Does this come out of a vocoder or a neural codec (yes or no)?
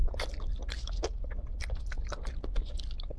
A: no